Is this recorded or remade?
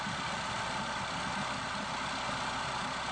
recorded